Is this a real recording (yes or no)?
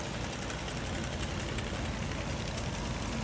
yes